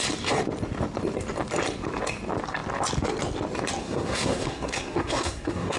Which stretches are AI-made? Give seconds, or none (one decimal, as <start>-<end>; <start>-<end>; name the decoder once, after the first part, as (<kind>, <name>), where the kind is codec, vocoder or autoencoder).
3.8-5.8 (codec, SNAC)